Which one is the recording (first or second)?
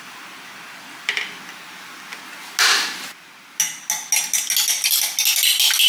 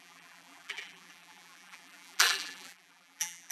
first